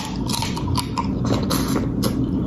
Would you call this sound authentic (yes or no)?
yes